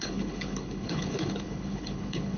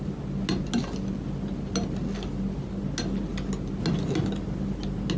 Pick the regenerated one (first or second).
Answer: first